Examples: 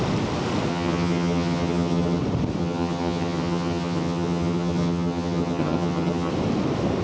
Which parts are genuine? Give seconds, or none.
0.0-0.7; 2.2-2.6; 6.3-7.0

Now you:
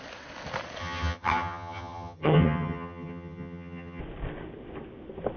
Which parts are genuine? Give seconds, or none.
0.0-0.8; 4.0-5.4